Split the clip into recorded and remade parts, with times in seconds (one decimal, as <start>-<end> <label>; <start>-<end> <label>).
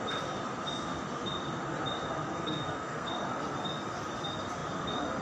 0.0-2.3 recorded; 2.3-3.1 remade; 3.1-5.2 recorded